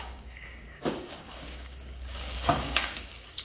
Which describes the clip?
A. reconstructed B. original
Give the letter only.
A